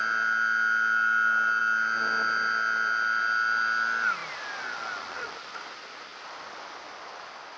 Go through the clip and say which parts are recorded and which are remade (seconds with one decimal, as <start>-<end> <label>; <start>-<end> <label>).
0.0-7.6 recorded